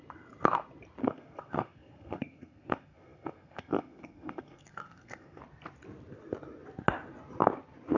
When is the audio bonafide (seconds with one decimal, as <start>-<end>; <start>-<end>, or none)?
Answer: 0.0-1.0; 5.4-8.0